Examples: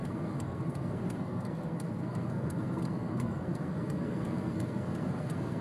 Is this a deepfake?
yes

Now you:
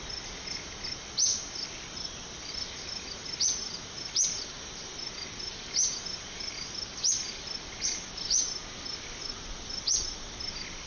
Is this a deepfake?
no